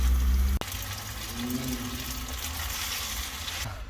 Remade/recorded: recorded